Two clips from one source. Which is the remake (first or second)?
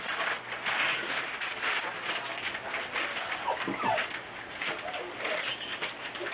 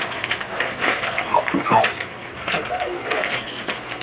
second